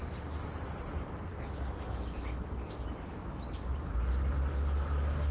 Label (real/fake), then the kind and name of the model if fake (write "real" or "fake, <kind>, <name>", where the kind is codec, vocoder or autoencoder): real